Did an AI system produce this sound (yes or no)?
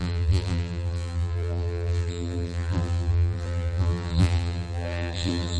yes